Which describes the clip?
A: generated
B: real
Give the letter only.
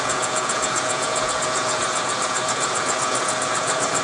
A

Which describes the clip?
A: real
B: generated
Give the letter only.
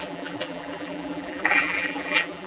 B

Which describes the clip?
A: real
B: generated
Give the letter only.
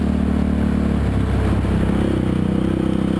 A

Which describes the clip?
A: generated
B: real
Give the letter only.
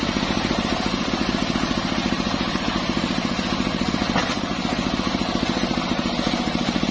B